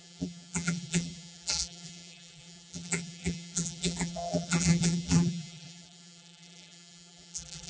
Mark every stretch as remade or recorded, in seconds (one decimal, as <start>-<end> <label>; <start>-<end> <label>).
0.0-7.7 remade